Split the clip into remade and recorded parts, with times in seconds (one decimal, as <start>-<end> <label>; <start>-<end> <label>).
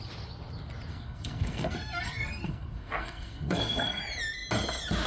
0.0-0.9 recorded; 0.9-4.0 remade; 4.0-5.1 recorded